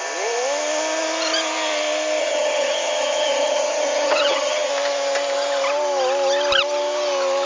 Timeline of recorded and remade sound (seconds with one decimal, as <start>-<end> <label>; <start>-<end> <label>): 0.0-2.2 recorded; 2.2-4.7 remade; 4.7-7.5 recorded